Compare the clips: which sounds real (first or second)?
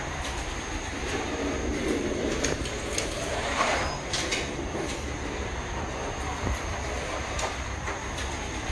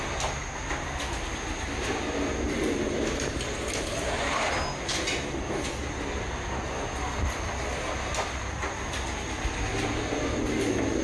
second